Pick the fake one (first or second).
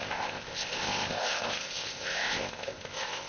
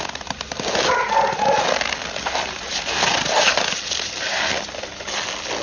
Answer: first